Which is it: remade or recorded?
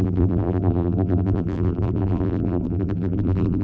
remade